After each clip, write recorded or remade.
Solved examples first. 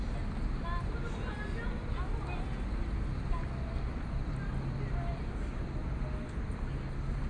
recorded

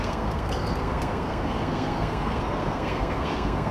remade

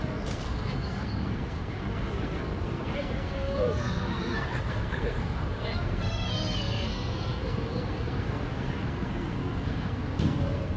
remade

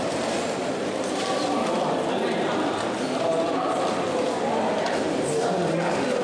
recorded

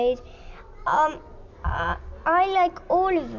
recorded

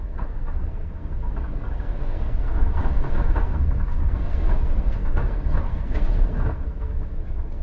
remade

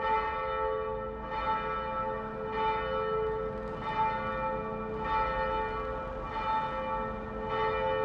recorded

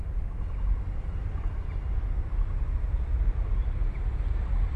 recorded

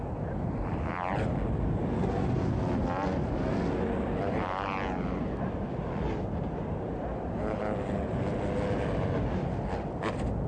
recorded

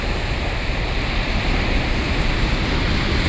recorded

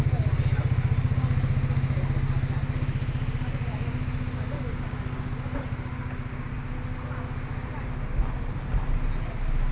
recorded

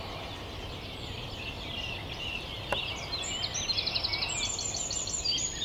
recorded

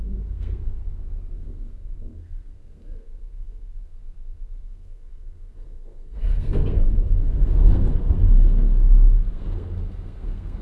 remade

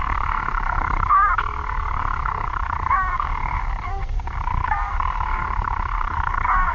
remade